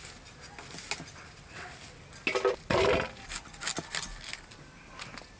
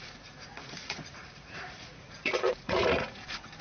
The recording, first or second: first